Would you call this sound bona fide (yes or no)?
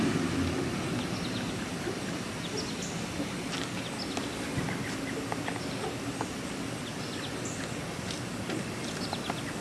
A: yes